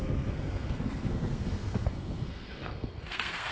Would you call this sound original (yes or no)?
no